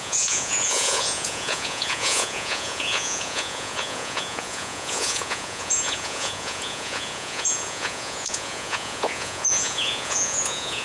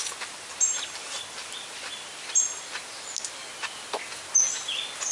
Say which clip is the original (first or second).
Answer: second